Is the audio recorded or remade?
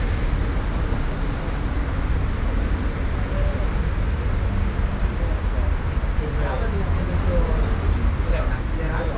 recorded